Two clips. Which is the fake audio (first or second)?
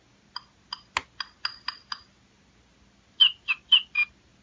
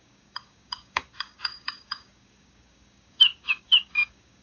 second